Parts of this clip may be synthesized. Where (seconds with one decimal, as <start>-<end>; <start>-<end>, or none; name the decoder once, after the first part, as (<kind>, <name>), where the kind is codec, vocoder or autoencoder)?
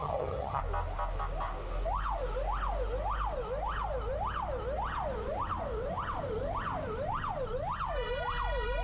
0.0-0.6 (vocoder, HiFi-GAN)